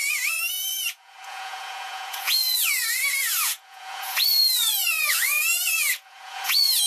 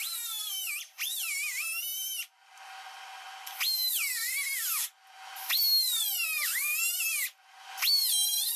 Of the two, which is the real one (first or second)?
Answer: second